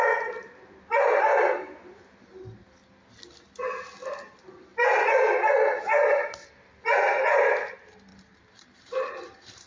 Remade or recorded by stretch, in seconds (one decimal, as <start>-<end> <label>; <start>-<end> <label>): 0.0-8.1 recorded; 8.1-9.7 remade